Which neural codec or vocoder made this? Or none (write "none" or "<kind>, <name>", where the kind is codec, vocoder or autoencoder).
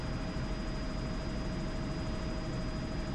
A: none